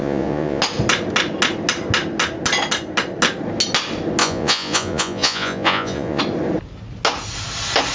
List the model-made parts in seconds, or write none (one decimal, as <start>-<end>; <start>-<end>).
0.0-0.6; 4.2-6.2